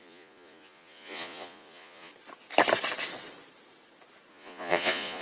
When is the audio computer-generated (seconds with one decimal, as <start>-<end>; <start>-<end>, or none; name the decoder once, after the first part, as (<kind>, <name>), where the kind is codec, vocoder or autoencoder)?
0.0-2.1 (vocoder, Vocos); 4.3-5.2